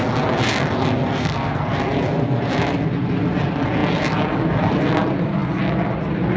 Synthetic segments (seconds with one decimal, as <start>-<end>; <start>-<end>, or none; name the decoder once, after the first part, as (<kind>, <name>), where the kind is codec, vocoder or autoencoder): 1.2-1.7 (codec, SNAC)